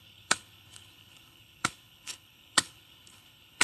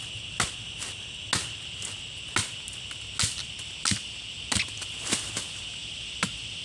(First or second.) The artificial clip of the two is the first